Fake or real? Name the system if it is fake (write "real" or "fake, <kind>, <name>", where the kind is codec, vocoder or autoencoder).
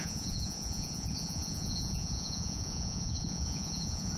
fake, vocoder, Vocos